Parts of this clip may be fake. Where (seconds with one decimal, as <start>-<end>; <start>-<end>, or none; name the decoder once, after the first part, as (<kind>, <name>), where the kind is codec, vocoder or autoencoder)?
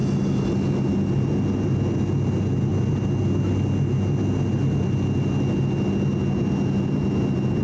none